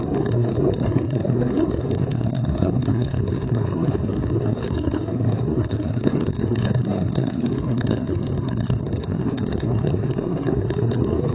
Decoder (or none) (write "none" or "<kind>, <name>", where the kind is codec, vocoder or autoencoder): codec, SNAC